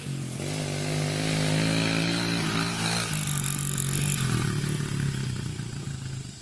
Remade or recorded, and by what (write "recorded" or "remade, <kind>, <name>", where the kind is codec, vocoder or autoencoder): recorded